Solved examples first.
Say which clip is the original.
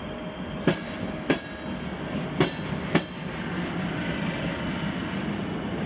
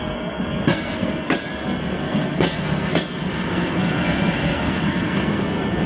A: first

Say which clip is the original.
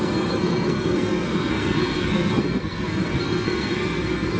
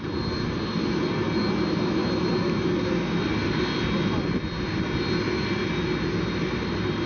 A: second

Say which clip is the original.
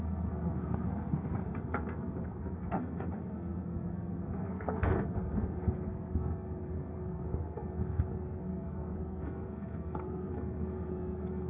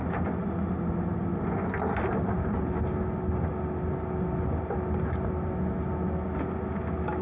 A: second